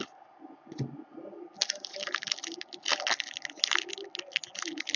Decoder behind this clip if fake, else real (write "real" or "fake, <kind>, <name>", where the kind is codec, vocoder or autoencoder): real